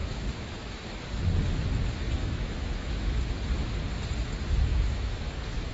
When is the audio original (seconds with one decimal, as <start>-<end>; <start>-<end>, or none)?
0.9-2.2; 3.4-4.7